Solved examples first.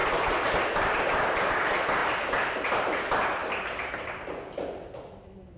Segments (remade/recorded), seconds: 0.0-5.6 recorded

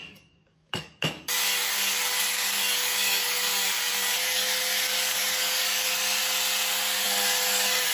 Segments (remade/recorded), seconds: 0.0-6.2 remade; 6.2-7.0 recorded; 7.0-7.9 remade

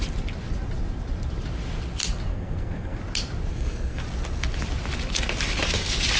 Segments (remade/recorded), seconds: 0.0-2.3 recorded; 2.3-3.0 remade; 3.0-3.5 recorded; 3.5-4.0 remade; 4.0-6.2 recorded

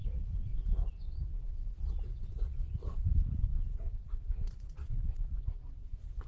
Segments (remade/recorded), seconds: 0.0-0.7 remade; 0.7-1.4 recorded; 1.4-3.0 remade; 3.0-3.5 recorded; 3.5-5.6 remade; 5.6-6.3 recorded

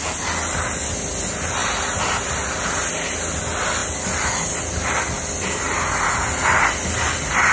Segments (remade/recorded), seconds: 0.0-1.6 recorded; 1.6-2.9 remade; 2.9-7.5 recorded

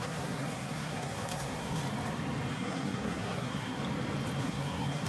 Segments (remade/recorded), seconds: 0.0-1.8 remade; 1.8-2.5 recorded; 2.5-3.8 remade; 3.8-4.4 recorded; 4.4-5.1 remade